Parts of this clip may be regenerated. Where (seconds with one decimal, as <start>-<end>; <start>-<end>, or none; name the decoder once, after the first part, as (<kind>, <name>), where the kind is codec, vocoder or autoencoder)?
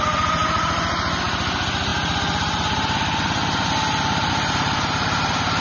none